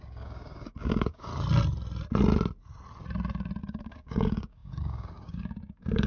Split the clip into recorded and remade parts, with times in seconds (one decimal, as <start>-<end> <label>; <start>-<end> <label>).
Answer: 0.0-1.3 remade; 1.3-3.6 recorded; 3.6-6.1 remade